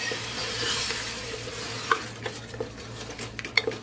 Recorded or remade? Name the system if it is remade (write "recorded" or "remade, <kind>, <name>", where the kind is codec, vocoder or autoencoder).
recorded